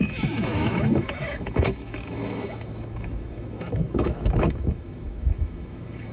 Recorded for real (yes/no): no